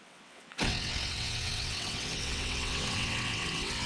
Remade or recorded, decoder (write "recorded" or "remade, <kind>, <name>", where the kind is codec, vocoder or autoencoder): remade, vocoder, WaveNeXt